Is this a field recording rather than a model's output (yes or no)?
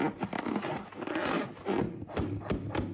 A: yes